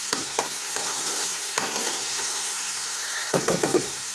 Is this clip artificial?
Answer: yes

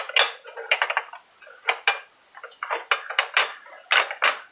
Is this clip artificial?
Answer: no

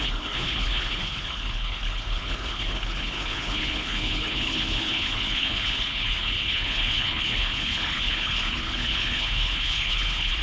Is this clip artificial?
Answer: yes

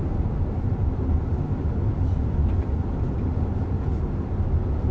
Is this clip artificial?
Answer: no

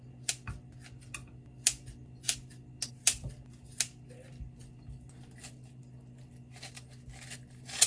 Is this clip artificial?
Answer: no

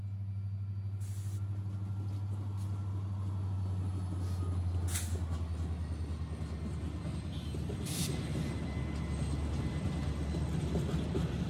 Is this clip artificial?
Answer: no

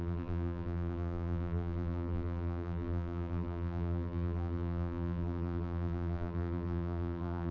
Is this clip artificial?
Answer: yes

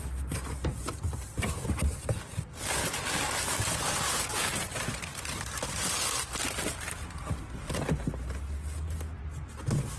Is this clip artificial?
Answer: no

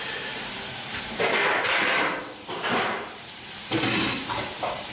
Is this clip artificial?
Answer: yes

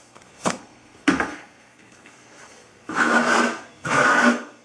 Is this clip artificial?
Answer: yes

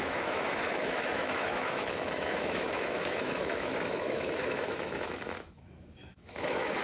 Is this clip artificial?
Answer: yes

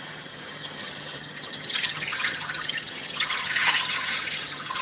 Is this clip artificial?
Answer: yes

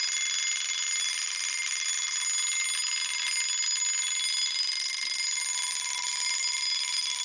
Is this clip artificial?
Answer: no